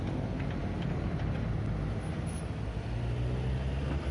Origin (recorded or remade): recorded